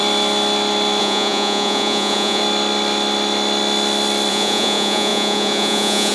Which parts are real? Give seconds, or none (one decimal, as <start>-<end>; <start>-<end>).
0.0-1.0; 2.4-4.3